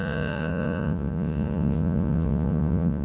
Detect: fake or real fake